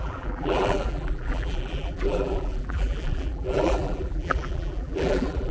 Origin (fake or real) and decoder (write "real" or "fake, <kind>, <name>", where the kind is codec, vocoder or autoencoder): fake, vocoder, BigVGAN v2